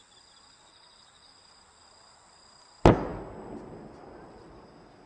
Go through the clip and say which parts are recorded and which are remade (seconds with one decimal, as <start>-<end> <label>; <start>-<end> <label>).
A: 0.0-5.1 recorded